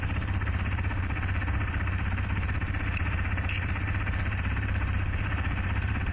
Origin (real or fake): fake